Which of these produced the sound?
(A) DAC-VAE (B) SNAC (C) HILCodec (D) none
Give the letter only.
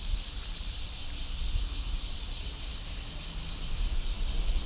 D